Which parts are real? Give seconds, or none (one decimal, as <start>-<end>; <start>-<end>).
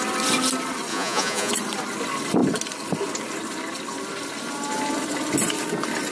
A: 0.0-0.9; 1.5-6.1